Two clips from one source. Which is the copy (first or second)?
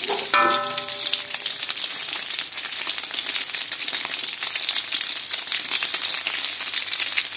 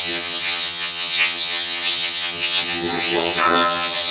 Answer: second